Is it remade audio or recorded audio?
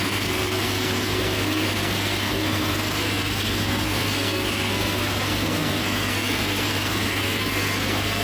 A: remade